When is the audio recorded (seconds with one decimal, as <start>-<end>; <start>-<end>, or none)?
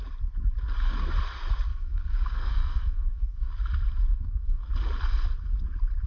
0.0-1.7; 3.5-4.1; 4.7-6.1